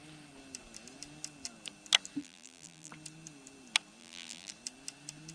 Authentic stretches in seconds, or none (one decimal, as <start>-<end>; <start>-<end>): 0.0-2.2; 2.9-4.0; 4.5-5.3